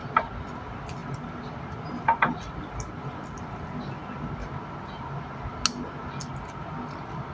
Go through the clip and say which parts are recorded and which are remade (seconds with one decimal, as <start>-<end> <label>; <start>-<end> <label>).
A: 0.0-7.3 recorded